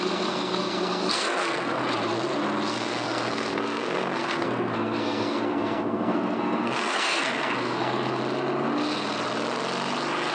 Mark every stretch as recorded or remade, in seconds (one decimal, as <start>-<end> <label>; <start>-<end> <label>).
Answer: 0.0-1.8 remade; 1.8-2.7 recorded; 2.7-8.2 remade; 8.2-10.3 recorded